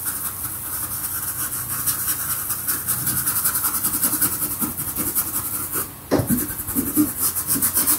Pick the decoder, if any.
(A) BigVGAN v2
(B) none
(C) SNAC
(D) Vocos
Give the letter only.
B